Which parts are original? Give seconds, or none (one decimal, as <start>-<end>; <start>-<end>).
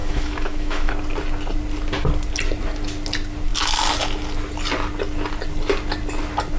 0.9-6.6